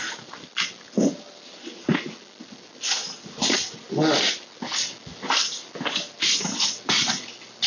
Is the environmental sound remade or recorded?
recorded